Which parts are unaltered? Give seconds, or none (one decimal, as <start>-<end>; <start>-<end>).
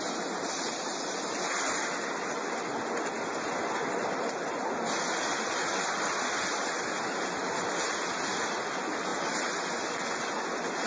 0.0-10.9